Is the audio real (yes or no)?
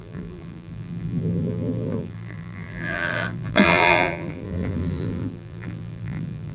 no